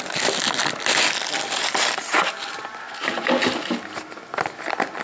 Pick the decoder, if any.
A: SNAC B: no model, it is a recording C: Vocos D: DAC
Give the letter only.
B